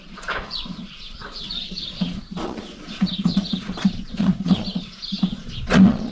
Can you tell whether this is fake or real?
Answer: fake